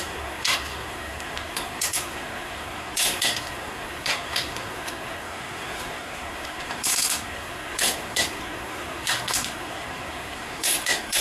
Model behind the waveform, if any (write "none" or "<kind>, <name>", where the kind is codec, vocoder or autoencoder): codec, SNAC